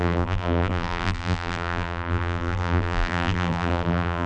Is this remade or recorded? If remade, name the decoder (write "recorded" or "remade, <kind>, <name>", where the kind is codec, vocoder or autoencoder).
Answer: remade, vocoder, BigVGAN v2